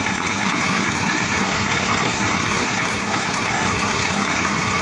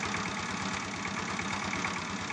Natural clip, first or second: second